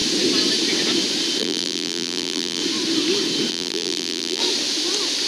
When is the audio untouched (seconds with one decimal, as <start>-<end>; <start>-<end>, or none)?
0.0-1.4; 2.6-3.5; 4.4-5.3